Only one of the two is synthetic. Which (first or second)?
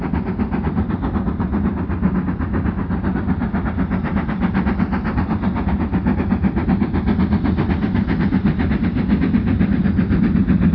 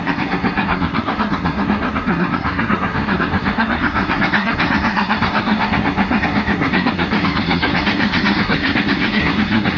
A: second